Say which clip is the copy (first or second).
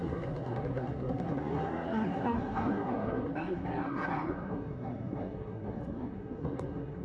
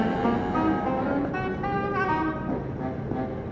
first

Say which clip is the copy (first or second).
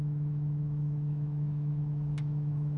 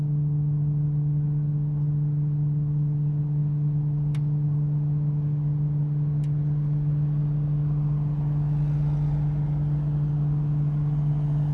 first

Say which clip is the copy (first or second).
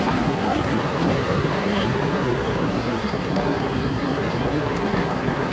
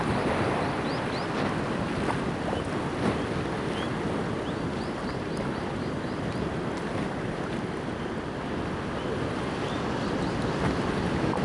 first